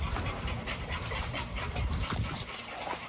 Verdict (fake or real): fake